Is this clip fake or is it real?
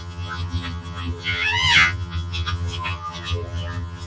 fake